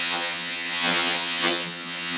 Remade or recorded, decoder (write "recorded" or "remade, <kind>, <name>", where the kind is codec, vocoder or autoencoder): remade, vocoder, HiFi-GAN